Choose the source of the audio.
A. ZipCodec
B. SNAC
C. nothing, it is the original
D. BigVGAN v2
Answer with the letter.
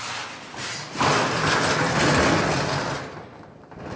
C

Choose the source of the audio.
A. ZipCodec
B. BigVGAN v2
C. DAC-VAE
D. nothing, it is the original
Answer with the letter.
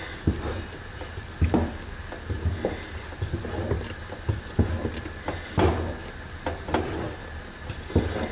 D